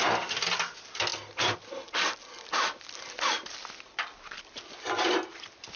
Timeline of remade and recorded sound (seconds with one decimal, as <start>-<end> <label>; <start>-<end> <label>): 0.0-5.8 recorded